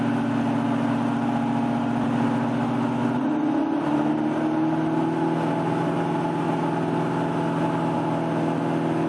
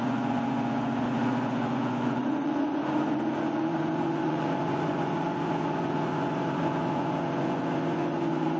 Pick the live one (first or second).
first